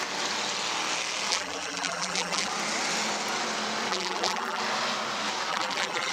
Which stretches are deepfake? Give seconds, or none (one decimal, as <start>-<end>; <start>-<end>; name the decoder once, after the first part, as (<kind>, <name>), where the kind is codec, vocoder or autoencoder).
1.3-2.5 (vocoder, BigVGAN v2); 3.9-4.6; 5.5-6.1